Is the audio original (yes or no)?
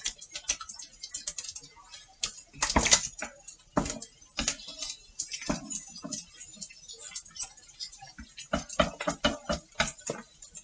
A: yes